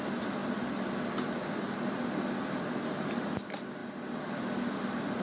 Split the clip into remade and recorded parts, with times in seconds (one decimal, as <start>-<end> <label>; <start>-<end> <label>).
0.0-5.2 recorded